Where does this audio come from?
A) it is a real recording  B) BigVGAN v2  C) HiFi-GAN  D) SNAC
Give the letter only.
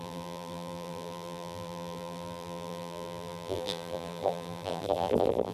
B